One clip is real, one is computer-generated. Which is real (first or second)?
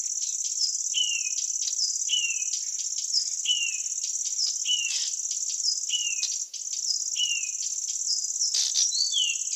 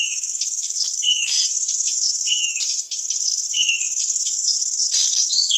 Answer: first